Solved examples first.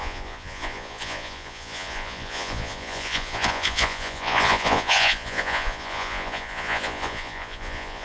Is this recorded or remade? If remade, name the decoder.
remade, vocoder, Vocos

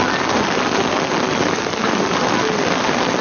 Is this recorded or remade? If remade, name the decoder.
recorded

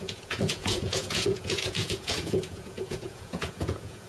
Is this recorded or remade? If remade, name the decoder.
remade, vocoder, Vocos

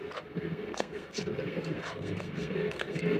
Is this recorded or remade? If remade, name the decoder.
remade, codec, SNAC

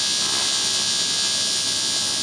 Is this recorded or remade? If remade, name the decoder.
recorded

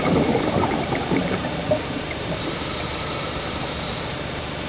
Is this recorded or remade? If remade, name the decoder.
remade, vocoder, BigVGAN v2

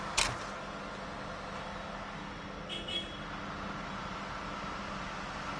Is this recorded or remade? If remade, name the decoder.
recorded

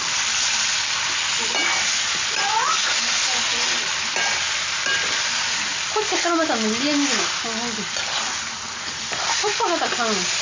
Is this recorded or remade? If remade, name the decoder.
recorded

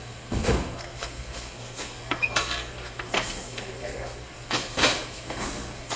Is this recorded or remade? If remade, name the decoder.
remade, codec, SNAC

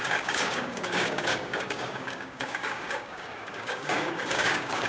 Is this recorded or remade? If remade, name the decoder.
remade, codec, DAC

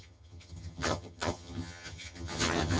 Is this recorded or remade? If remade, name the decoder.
remade, vocoder, HiFi-GAN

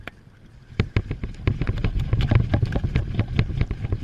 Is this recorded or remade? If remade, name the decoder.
remade, vocoder, BigVGAN v2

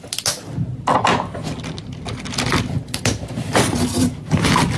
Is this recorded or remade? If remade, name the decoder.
recorded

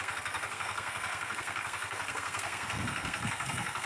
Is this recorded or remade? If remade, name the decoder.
remade, codec, SNAC